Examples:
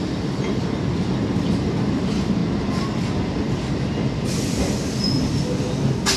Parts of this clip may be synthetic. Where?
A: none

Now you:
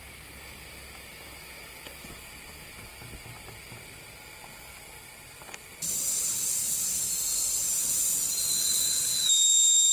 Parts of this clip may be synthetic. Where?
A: none

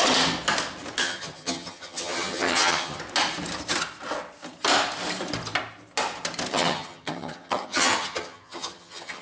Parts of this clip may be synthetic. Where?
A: 1.0-3.0 (vocoder, HiFi-GAN); 6.5-9.2

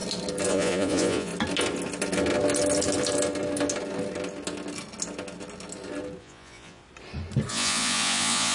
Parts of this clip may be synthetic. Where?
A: 0.5-1.3 (vocoder, Vocos); 6.2-6.8; 7.5-8.5

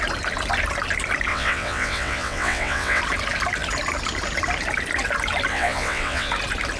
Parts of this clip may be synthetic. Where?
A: 1.3-3.0 (vocoder, WaveNeXt); 5.5-6.3

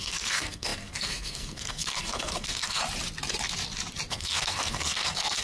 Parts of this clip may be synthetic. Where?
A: 0.0-2.8 (codec, SNAC); 4.1-5.4

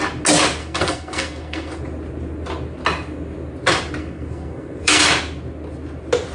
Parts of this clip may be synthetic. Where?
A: 0.6-1.8 (codec, SNAC); 4.0-5.0

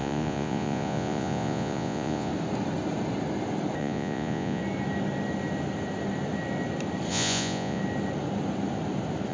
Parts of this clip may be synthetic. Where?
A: 0.0-2.3 (vocoder, Vocos); 3.8-4.6; 7.1-7.8